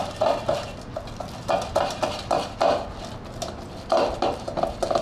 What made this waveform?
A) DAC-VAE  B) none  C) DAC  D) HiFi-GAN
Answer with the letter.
B